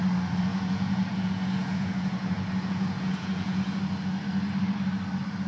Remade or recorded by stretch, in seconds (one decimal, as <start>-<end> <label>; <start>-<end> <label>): 0.0-0.5 recorded; 0.5-3.8 remade; 3.8-5.5 recorded